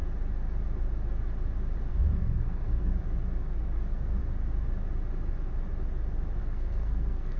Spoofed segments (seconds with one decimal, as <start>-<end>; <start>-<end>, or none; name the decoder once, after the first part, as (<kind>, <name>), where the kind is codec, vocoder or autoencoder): 1.9-2.9 (codec, SNAC); 3.4-4.2; 6.4-7.4